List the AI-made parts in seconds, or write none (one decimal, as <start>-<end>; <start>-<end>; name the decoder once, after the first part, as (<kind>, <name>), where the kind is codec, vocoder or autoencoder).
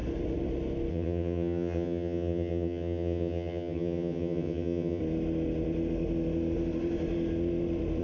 0.9-5.0 (vocoder, HiFi-GAN)